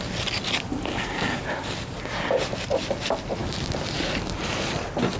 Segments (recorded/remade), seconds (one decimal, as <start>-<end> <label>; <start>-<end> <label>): 0.0-0.9 recorded; 0.9-1.4 remade; 1.4-5.2 recorded